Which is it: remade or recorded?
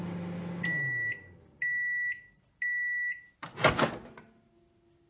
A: recorded